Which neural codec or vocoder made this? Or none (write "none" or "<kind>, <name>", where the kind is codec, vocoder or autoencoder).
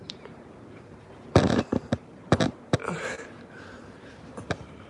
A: vocoder, BigVGAN v2